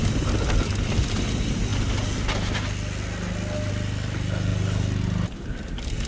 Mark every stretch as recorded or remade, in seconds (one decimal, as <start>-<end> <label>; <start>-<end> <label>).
0.0-6.1 recorded